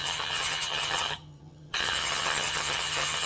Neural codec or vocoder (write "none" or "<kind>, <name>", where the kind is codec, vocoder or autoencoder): vocoder, HiFi-GAN